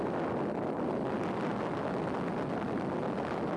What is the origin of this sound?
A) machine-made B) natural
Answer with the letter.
B